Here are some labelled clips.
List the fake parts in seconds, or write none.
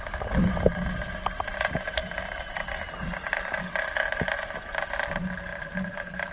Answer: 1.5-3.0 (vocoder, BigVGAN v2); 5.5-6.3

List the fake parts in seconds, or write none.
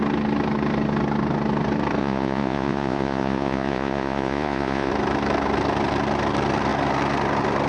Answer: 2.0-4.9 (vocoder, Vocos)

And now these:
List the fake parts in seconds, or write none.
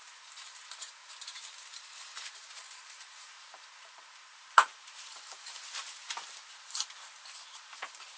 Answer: 0.0-1.0 (vocoder, BigVGAN v2); 2.2-6.0; 6.5-8.2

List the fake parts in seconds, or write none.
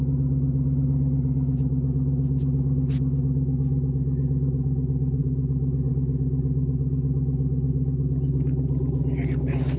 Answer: none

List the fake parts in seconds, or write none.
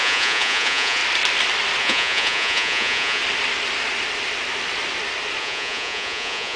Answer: 0.0-1.0 (vocoder, Vocos); 1.8-3.2; 5.4-6.6